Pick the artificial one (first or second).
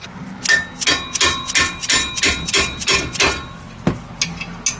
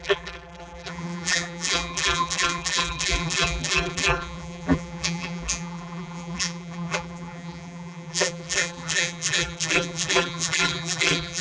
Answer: second